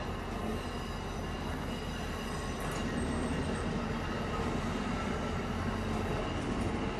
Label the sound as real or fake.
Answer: real